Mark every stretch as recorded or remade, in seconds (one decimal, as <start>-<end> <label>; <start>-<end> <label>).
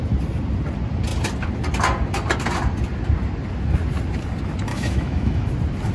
0.0-4.7 recorded; 4.7-5.5 remade; 5.5-5.9 recorded